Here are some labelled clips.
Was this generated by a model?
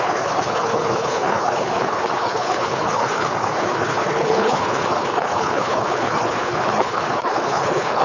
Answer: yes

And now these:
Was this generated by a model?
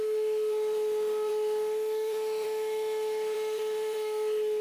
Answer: yes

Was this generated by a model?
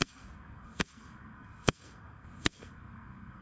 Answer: yes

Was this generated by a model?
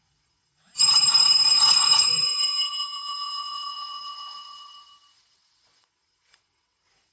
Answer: yes